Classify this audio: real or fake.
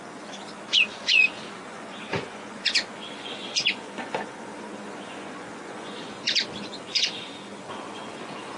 fake